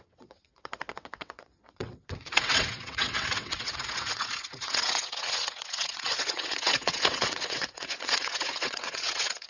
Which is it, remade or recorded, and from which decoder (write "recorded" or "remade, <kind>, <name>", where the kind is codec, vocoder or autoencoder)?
remade, vocoder, WaveNeXt